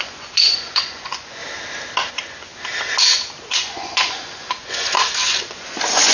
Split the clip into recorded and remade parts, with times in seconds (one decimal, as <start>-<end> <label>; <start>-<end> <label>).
0.0-1.4 remade; 1.4-2.1 recorded; 2.1-2.5 remade; 2.5-3.5 recorded; 3.5-6.1 remade